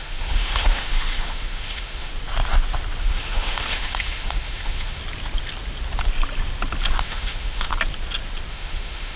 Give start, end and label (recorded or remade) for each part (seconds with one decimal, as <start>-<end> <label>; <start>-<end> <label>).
0.0-2.1 remade; 2.1-3.0 recorded; 3.0-5.0 remade; 5.0-7.0 recorded; 7.0-7.7 remade; 7.7-8.5 recorded; 8.5-9.2 remade